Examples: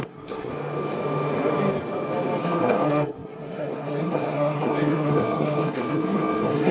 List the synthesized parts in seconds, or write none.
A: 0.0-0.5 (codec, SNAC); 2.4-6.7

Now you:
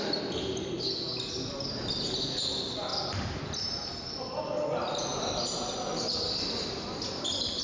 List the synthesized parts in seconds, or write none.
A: none

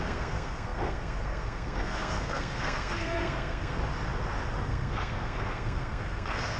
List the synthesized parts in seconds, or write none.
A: 0.0-3.8 (codec, SNAC); 4.6-6.6

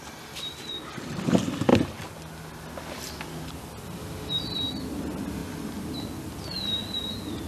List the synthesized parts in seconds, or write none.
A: none

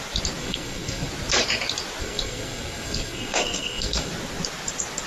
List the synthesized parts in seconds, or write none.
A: 0.4-1.1 (codec, SNAC); 2.0-4.1

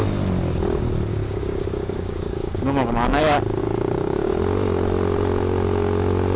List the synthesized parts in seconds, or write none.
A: 1.1-3.2 (codec, DAC); 3.6-4.3